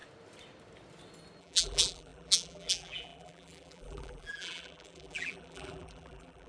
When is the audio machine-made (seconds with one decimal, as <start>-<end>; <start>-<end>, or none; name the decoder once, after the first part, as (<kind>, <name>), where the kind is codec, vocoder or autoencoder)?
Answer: 1.4-6.5 (vocoder, BigVGAN v2)